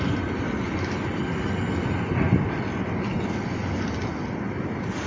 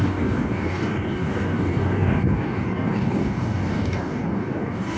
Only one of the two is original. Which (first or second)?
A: first